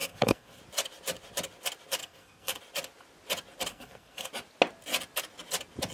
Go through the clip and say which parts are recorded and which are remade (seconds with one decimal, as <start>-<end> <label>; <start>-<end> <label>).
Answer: 0.0-0.6 remade; 0.6-2.0 recorded; 2.0-2.6 remade; 2.6-3.7 recorded; 3.7-4.3 remade; 4.3-5.9 recorded